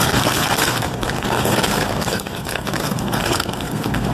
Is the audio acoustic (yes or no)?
no